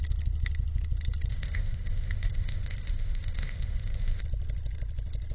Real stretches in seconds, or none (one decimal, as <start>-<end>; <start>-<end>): 0.0-1.3; 4.2-5.3